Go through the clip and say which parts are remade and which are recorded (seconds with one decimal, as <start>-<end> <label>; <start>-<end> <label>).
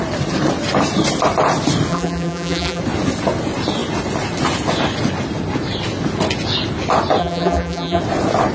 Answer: 0.0-1.9 recorded; 1.9-2.8 remade; 2.8-7.2 recorded; 7.2-8.0 remade; 8.0-8.5 recorded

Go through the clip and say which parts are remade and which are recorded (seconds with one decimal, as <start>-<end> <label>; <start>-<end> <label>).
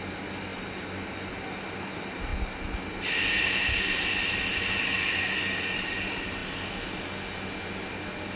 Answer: 0.0-8.4 recorded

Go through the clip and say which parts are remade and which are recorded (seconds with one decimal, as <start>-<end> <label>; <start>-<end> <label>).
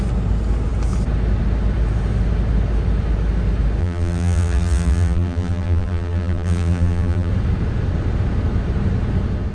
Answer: 0.0-3.8 recorded; 3.8-7.3 remade; 7.3-9.5 recorded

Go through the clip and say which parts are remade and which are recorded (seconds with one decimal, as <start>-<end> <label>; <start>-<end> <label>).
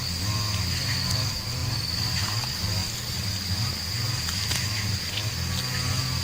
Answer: 0.0-6.2 recorded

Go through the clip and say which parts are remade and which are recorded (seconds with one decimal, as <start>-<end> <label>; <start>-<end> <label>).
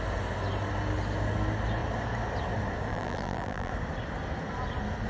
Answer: 0.0-2.9 recorded; 2.9-3.7 remade; 3.7-5.1 recorded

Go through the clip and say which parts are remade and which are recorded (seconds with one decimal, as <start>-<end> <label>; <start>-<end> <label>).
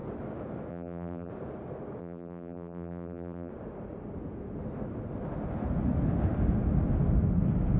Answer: 0.0-0.7 recorded; 0.7-1.3 remade; 1.3-2.0 recorded; 2.0-3.5 remade; 3.5-7.8 recorded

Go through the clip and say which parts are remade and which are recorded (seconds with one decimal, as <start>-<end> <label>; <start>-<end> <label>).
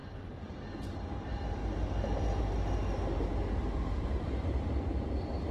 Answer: 0.0-1.2 recorded; 1.2-1.6 remade; 1.6-4.0 recorded; 4.0-5.5 remade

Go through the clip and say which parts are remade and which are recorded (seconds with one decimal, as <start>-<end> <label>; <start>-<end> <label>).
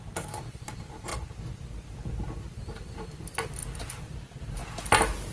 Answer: 0.0-1.1 remade; 1.1-2.4 recorded; 2.4-3.6 remade; 3.6-4.1 recorded; 4.1-4.6 remade; 4.6-5.3 recorded